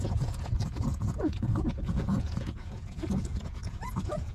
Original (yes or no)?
no